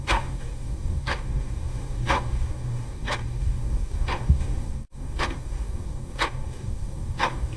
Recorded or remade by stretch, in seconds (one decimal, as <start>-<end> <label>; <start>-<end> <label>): 0.0-7.6 remade